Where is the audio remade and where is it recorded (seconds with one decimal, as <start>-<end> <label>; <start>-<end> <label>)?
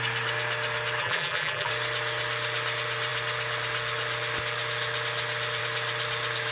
0.0-1.0 recorded; 1.0-1.7 remade; 1.7-6.5 recorded